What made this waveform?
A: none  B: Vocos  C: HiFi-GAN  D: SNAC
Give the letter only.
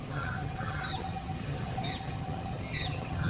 C